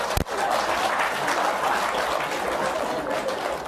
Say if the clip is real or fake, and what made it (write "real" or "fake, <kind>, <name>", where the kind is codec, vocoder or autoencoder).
real